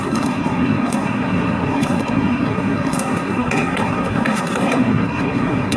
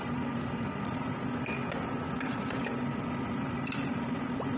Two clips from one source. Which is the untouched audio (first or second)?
second